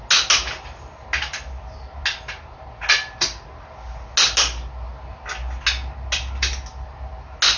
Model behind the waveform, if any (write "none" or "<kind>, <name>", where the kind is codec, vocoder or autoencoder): none